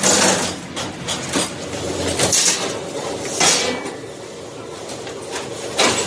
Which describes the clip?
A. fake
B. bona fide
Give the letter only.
B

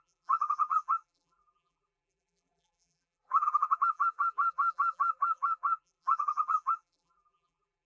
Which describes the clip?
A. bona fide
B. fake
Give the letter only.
B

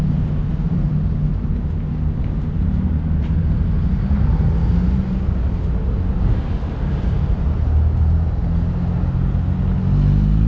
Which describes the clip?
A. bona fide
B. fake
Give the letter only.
A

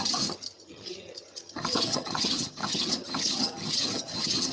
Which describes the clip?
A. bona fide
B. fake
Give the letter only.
B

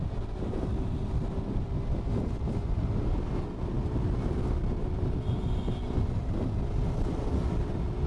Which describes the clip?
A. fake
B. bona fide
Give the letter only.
B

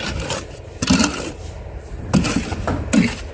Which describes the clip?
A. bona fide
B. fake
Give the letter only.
A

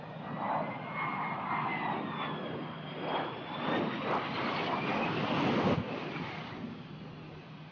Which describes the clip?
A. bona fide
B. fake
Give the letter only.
A